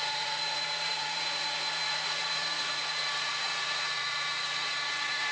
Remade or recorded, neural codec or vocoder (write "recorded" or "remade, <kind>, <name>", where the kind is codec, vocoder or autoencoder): remade, vocoder, Vocos